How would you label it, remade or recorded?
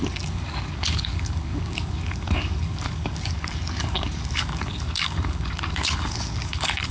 remade